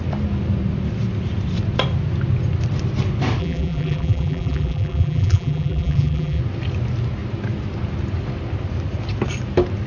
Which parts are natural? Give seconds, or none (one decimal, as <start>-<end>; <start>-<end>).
0.0-3.4; 6.4-9.9